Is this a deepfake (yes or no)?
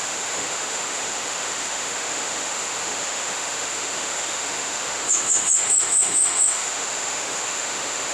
yes